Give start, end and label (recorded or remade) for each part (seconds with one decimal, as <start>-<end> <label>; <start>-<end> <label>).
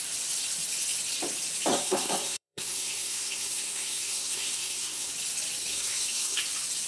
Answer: 0.0-1.7 recorded; 1.7-5.1 remade; 5.1-5.7 recorded; 5.7-6.4 remade; 6.4-6.9 recorded